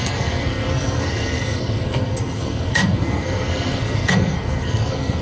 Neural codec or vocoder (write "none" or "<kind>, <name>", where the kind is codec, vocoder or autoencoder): codec, SNAC